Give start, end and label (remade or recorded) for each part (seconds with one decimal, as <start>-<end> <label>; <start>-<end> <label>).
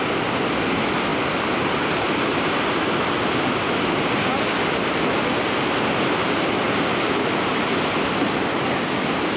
0.0-9.4 recorded